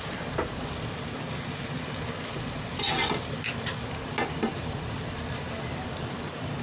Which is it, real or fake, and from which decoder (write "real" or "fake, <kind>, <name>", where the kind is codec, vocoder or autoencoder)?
real